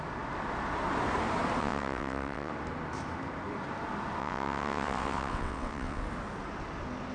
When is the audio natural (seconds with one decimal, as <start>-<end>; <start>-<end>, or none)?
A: 0.0-1.6; 2.5-4.2; 6.0-7.1